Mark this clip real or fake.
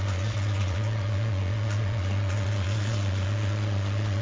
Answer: fake